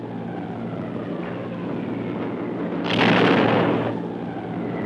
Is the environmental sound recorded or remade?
recorded